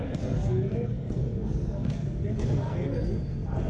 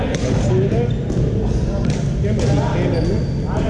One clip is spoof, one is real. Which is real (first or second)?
second